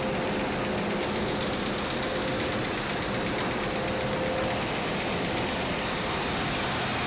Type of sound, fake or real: real